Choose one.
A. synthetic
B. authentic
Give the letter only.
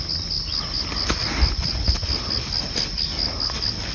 B